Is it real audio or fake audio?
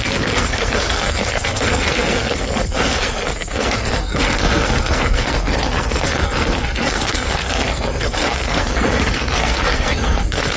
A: fake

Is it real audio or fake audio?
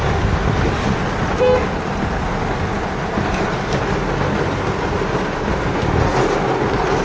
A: real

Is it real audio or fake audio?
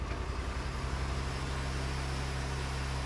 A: real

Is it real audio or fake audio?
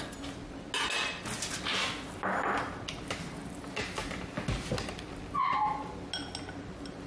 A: real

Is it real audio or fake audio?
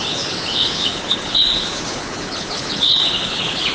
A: fake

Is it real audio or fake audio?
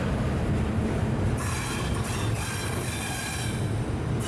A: fake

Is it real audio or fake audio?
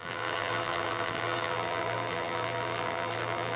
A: fake